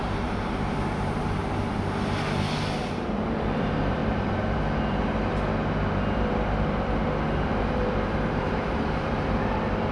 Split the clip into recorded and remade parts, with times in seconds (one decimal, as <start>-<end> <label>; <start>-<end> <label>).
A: 0.0-1.4 remade; 1.4-2.8 recorded; 2.8-4.0 remade; 4.0-7.6 recorded; 7.6-9.9 remade